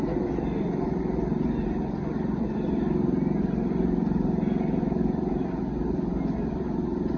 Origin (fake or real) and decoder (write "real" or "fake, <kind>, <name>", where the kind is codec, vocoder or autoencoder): real